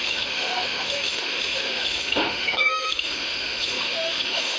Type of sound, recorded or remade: remade